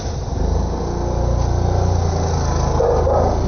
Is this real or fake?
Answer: real